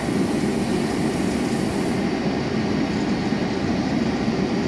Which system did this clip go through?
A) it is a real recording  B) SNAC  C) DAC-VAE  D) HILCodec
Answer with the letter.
A